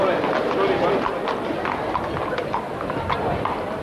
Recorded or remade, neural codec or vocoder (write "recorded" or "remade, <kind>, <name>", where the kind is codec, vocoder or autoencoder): recorded